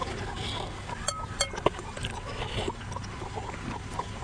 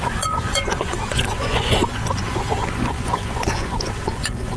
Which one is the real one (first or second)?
first